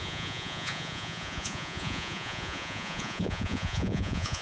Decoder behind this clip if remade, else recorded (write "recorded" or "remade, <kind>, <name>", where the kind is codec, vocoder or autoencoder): remade, vocoder, Vocos